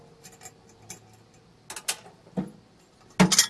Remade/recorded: recorded